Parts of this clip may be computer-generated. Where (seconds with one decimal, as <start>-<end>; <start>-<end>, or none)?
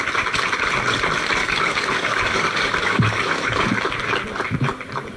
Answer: 1.4-3.8